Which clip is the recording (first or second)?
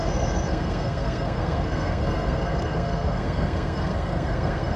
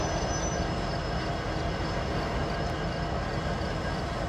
second